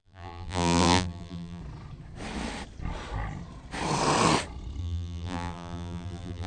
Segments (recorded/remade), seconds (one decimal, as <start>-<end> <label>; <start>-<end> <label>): 0.0-1.6 remade; 1.6-4.8 recorded; 4.8-6.5 remade